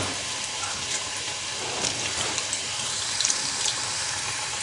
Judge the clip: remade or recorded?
remade